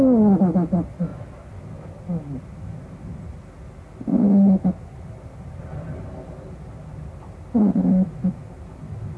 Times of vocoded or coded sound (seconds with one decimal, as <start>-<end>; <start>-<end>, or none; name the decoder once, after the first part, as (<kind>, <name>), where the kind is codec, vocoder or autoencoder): none